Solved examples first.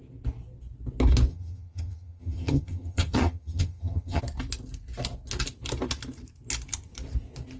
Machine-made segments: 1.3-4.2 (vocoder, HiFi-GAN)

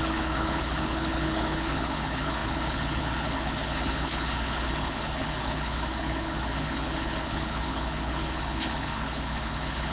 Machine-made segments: 0.0-9.9 (codec, HILCodec)

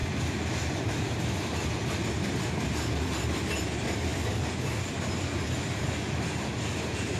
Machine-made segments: none